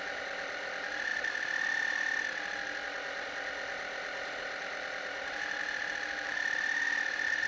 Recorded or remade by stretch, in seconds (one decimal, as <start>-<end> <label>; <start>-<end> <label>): 0.0-7.5 recorded